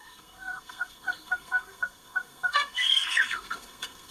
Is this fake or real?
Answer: fake